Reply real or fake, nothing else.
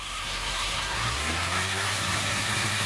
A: fake